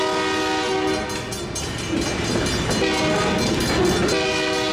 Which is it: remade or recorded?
recorded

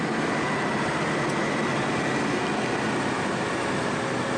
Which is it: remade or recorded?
recorded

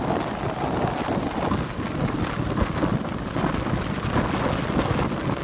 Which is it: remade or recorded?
recorded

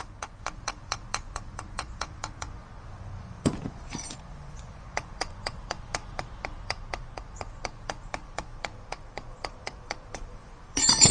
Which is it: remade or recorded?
remade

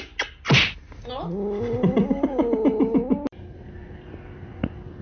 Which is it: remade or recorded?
recorded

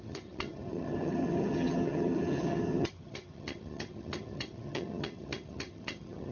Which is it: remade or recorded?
remade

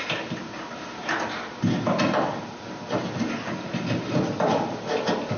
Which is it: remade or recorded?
recorded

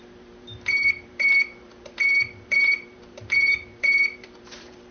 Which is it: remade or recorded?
remade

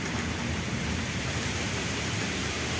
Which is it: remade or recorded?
remade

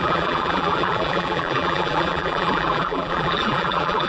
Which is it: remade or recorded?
remade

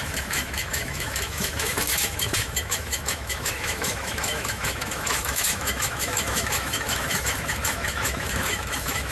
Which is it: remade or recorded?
remade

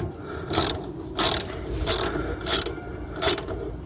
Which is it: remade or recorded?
remade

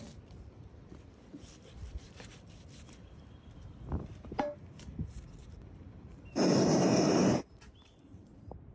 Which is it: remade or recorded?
remade